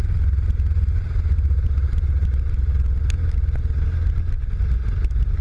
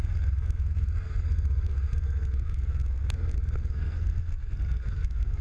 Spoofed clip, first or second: second